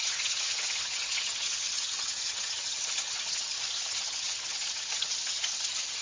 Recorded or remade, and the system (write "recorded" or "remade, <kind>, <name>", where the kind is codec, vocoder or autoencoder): remade, vocoder, HiFi-GAN